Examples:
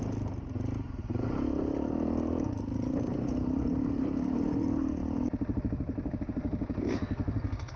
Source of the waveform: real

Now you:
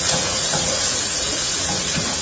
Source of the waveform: fake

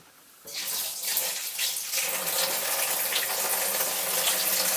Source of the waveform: real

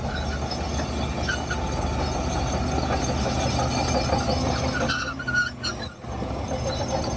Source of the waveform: real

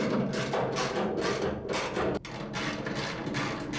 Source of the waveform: real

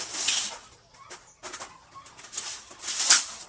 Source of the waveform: real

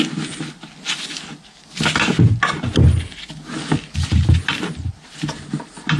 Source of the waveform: real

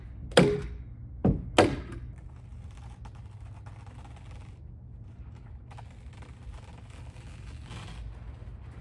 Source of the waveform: real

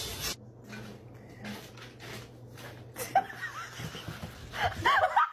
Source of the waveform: real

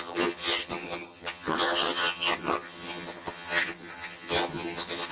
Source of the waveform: fake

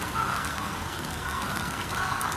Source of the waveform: fake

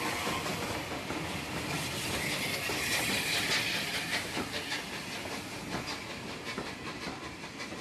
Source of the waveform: real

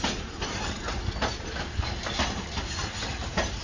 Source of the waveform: real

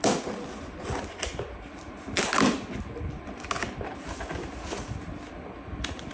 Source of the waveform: real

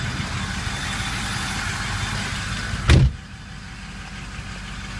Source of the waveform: real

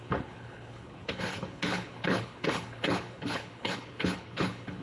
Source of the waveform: fake